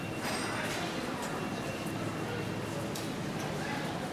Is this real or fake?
real